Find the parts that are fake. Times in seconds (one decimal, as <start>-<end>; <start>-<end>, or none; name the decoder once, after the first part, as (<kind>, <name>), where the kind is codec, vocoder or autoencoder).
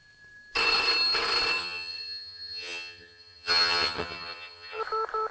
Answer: 1.6-4.8 (vocoder, HiFi-GAN)